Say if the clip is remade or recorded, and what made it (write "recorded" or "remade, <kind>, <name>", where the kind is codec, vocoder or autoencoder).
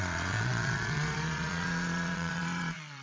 remade, vocoder, Vocos